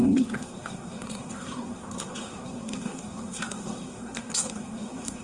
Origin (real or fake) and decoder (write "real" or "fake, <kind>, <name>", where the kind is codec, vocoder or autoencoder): fake, codec, SNAC